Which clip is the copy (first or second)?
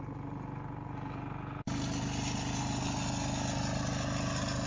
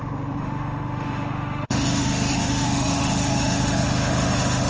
second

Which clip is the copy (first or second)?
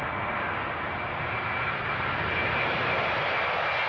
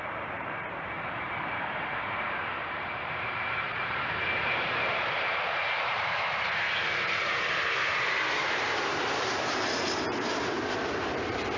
second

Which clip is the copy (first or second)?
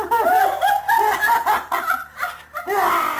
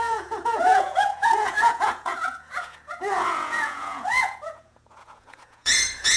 second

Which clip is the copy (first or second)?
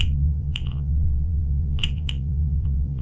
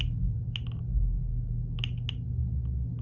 first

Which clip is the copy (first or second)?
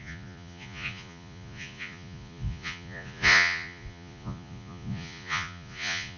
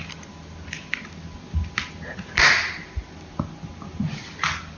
first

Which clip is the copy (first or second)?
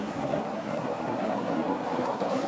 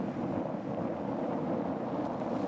first